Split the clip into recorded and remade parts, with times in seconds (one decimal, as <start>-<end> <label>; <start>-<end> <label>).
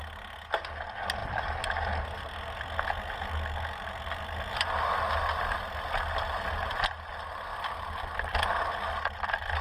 0.0-9.6 recorded